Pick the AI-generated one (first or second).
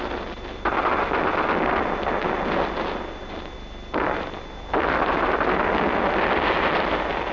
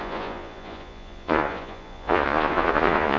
second